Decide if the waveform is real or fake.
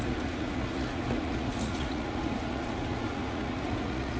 fake